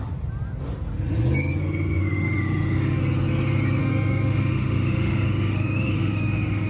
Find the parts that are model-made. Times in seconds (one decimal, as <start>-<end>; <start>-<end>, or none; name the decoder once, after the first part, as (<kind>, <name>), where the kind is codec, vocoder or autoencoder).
1.6-3.0 (autoencoder, DAC-VAE); 3.8-6.7